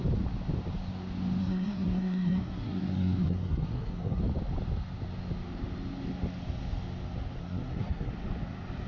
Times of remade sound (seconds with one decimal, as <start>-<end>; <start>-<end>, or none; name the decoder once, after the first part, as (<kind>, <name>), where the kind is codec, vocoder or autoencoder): 1.4-4.2 (codec, SNAC); 7.4-8.1